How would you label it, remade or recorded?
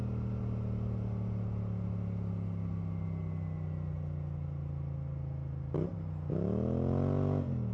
recorded